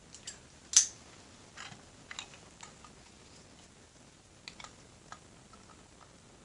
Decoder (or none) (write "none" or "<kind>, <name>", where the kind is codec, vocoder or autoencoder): none